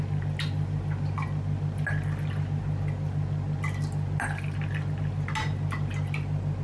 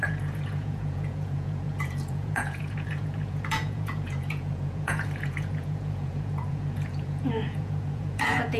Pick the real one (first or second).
first